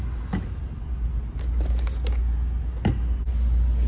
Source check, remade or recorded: recorded